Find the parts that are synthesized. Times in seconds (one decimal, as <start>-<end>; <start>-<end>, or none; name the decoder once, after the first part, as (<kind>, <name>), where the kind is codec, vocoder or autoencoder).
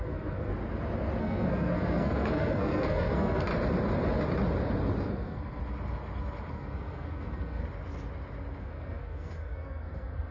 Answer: 0.0-0.5 (codec, SNAC); 1.2-3.5; 5.0-5.6; 6.5-7.6; 8.6-10.3